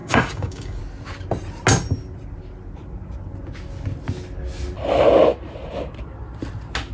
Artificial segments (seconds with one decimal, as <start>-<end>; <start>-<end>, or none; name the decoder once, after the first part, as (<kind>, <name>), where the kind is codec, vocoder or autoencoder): 0.0-0.8 (codec, DAC)